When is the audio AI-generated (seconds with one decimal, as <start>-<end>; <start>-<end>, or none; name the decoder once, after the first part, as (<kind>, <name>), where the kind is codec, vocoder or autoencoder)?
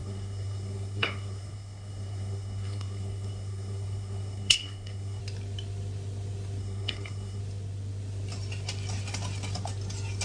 0.0-5.2 (codec, SNAC); 6.6-7.4